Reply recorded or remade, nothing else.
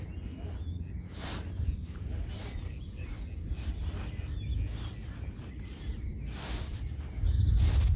recorded